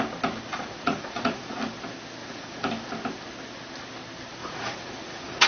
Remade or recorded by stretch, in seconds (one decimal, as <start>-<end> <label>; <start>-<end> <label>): 0.0-0.5 recorded; 0.5-1.6 remade; 1.6-2.2 recorded; 2.2-2.7 remade; 2.7-4.4 recorded; 4.4-5.5 remade